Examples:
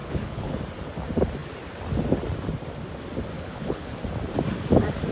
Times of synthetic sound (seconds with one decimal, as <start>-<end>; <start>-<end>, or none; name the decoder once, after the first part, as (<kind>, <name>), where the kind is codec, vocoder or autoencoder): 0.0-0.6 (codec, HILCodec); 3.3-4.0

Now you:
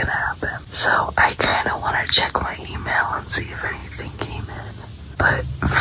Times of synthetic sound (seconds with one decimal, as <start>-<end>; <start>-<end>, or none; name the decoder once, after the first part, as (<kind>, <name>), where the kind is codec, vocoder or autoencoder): 0.0-1.5 (vocoder, BigVGAN v2); 2.7-3.8

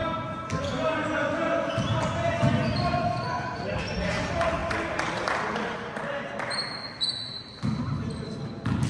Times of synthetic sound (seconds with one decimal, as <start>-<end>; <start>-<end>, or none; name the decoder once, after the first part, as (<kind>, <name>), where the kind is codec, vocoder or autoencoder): none

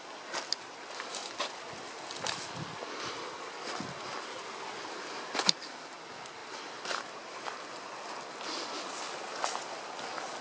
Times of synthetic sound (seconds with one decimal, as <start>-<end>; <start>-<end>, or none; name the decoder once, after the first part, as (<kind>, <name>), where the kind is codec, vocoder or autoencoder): 6.4-7.4 (vocoder, BigVGAN v2)